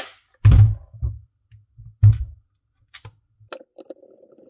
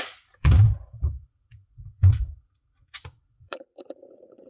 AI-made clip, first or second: second